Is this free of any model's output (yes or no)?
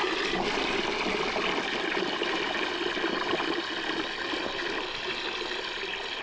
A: yes